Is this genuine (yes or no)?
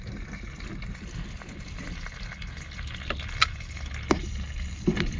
yes